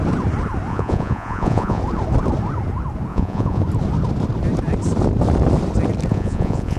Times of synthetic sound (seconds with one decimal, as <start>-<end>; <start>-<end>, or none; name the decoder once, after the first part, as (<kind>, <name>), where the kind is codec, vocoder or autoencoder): 0.7-1.8 (vocoder, Vocos); 3.1-3.6; 6.1-6.8